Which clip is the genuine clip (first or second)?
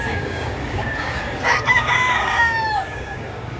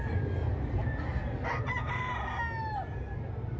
second